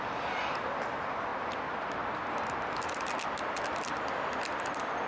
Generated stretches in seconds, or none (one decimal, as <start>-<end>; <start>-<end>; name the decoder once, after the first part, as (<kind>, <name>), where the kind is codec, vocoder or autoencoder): none